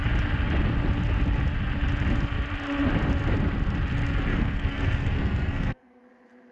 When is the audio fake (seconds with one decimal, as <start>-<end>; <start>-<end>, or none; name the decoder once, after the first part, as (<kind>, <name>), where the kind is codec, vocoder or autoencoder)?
4.3-6.0 (codec, SNAC)